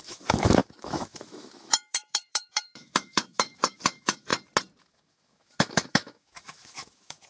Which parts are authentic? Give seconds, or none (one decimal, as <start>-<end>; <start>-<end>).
4.3-4.8